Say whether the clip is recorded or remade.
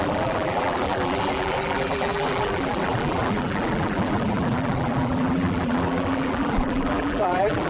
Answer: remade